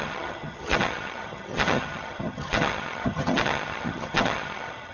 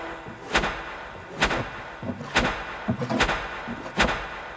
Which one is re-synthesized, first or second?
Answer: first